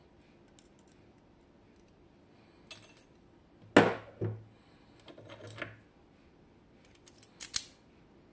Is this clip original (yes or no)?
yes